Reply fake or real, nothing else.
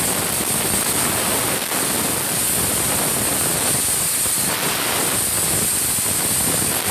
real